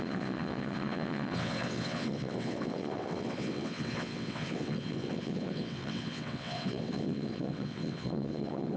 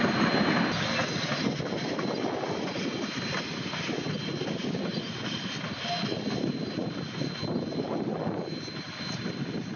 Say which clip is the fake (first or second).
first